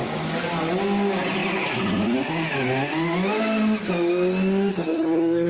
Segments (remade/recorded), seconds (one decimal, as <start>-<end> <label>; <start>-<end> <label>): 0.0-4.7 recorded; 4.7-5.5 remade